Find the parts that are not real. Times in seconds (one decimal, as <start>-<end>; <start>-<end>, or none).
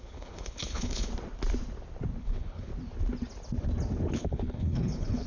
0.0-1.1; 2.2-2.7; 4.1-5.3